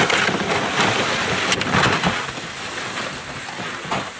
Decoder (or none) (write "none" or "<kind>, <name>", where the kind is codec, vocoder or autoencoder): none